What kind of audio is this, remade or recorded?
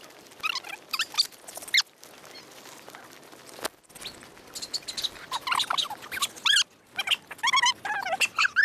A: recorded